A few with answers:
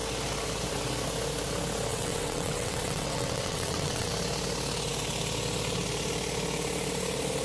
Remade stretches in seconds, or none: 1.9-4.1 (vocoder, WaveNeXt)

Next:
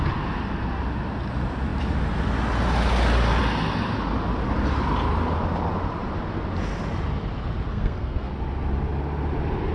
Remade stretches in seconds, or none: 7.7-8.3 (codec, SNAC)

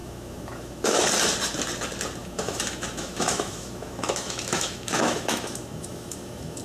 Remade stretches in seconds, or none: 0.0-1.1 (autoencoder, DAC-VAE); 2.2-6.6

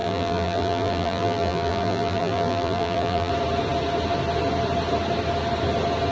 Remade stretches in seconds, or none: 0.0-3.3 (vocoder, BigVGAN v2)

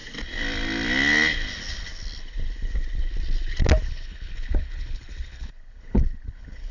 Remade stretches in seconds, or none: 3.8-6.7 (codec, HILCodec)

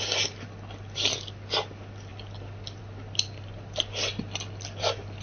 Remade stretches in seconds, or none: none

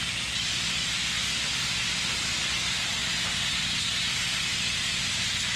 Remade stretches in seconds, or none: none